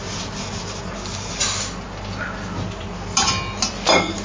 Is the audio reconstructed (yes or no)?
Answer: no